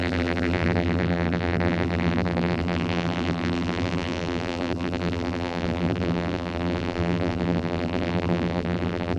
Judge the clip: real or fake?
fake